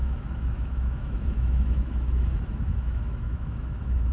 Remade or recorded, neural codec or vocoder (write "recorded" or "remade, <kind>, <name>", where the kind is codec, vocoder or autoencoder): remade, autoencoder, DAC-VAE